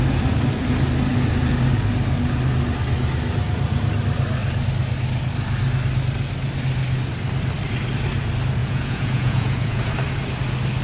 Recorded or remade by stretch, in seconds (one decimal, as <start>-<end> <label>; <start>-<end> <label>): 0.0-8.6 recorded; 8.6-9.9 remade; 9.9-10.8 recorded